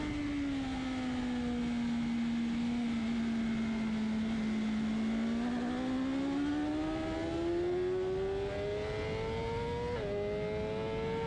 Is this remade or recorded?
recorded